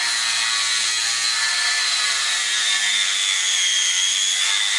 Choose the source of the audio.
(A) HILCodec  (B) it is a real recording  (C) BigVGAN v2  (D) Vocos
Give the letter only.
B